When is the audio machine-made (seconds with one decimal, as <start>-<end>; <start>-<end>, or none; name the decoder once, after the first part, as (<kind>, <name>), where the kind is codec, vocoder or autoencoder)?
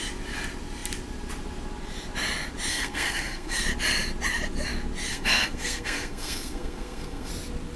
2.7-3.6 (codec, SNAC); 5.1-7.3